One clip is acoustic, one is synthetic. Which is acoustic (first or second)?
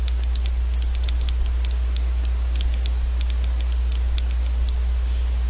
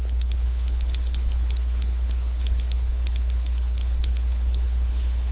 first